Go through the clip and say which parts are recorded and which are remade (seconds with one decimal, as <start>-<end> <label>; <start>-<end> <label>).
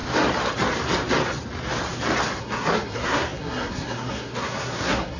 0.0-2.4 recorded; 2.4-5.2 remade